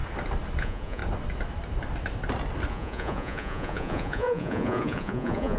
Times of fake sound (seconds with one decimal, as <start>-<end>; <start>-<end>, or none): 0.6-1.0; 2.7-5.6